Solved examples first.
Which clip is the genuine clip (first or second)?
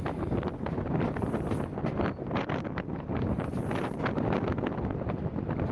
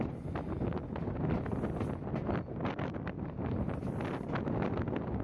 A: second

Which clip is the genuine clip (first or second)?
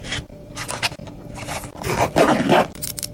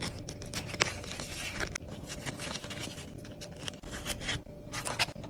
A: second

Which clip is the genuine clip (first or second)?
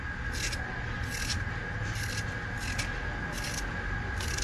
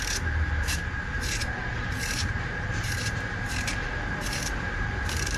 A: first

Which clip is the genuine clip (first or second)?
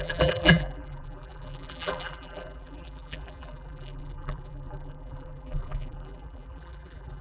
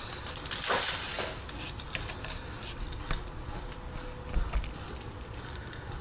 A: second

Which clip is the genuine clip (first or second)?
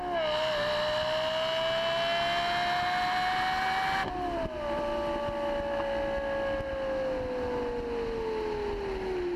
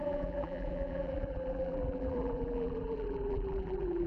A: first